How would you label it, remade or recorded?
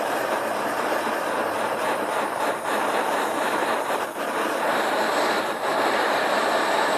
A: remade